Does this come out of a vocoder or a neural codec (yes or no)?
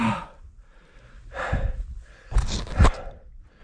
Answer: no